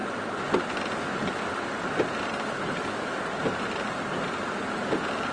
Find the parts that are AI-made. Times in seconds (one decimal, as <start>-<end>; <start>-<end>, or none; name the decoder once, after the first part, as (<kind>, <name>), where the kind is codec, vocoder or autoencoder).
none